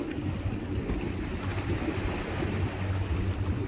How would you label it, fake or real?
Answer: real